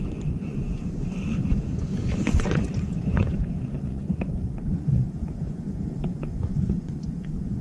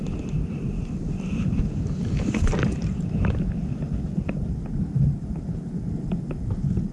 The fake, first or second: first